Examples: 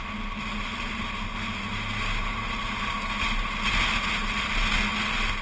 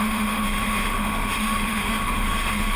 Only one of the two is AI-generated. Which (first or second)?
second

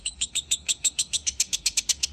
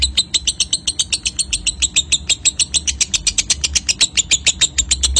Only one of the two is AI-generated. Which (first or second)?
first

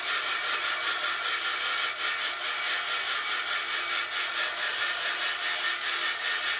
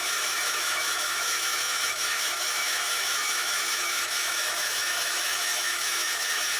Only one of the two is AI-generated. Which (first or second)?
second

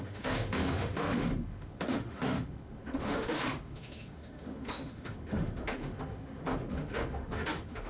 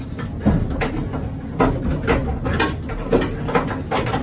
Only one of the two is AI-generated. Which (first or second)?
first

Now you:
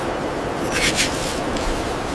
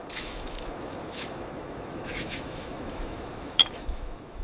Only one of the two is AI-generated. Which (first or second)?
second